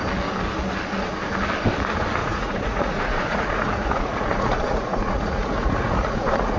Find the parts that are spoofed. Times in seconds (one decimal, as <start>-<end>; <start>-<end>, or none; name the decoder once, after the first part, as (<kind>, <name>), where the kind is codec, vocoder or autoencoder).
2.2-6.6 (vocoder, Vocos)